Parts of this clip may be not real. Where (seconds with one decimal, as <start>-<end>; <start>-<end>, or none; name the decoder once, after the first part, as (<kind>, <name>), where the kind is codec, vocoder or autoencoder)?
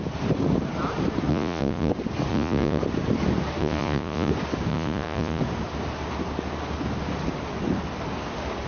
1.3-1.9 (vocoder, Vocos); 2.3-2.8; 3.6-4.3; 4.7-5.4